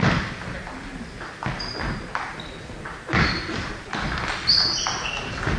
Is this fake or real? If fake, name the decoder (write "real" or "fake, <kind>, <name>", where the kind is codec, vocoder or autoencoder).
real